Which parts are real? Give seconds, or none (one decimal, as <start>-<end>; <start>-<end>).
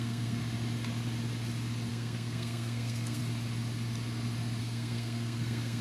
0.4-1.9; 3.2-4.6